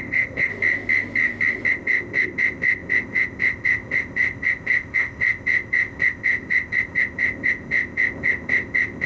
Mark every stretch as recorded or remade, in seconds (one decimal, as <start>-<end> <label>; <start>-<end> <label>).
0.0-0.5 remade; 0.5-1.7 recorded; 1.7-9.1 remade

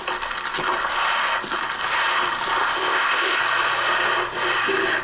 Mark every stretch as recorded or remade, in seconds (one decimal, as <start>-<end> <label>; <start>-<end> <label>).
0.0-2.6 recorded; 2.6-3.4 remade; 3.4-5.0 recorded

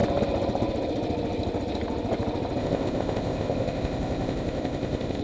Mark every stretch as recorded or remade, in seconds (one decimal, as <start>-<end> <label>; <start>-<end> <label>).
0.0-2.6 recorded; 2.6-5.2 remade

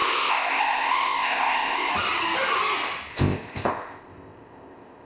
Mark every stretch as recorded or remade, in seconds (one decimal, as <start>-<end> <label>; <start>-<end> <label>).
0.0-1.9 remade; 1.9-3.1 recorded; 3.1-5.1 remade

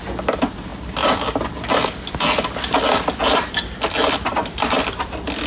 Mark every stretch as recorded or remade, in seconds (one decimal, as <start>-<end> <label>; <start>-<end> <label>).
0.0-5.5 recorded

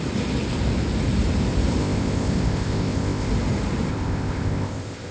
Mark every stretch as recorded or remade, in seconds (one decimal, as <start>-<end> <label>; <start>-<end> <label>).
0.0-1.8 recorded; 1.8-3.3 remade; 3.3-3.9 recorded; 3.9-5.1 remade

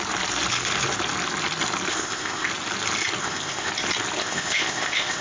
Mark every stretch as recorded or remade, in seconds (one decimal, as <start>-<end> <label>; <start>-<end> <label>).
0.0-1.9 recorded; 1.9-2.5 remade; 2.5-3.2 recorded; 3.2-3.7 remade; 3.7-4.2 recorded; 4.2-5.2 remade